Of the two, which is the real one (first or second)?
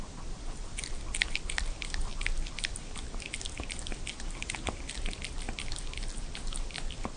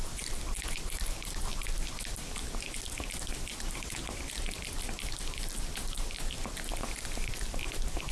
first